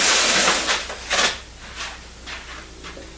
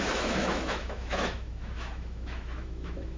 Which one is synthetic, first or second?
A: second